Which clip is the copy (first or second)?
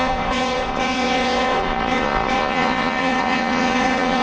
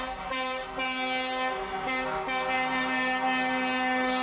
first